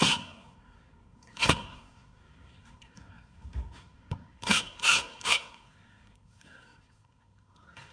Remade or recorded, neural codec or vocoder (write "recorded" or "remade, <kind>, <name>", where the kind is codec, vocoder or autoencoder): remade, codec, SNAC